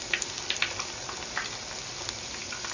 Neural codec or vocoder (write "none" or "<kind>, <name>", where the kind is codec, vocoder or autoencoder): none